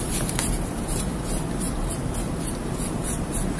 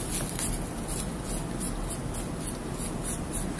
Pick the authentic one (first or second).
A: second